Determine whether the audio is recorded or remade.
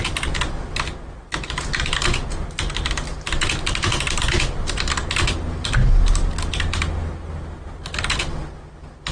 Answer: recorded